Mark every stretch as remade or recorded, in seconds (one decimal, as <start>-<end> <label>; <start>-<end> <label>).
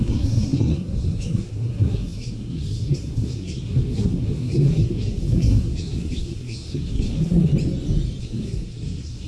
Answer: 0.0-7.5 remade; 7.5-8.2 recorded; 8.2-9.3 remade